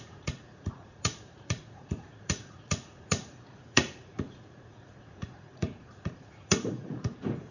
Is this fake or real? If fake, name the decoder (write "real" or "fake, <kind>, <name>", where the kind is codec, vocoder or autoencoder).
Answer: fake, vocoder, Vocos